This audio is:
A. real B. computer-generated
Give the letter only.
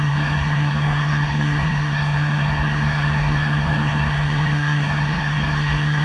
B